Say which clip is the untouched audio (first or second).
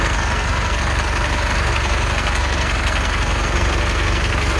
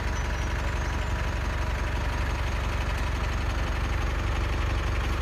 second